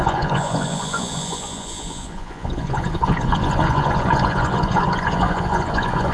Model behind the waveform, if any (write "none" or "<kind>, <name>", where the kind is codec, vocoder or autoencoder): vocoder, Vocos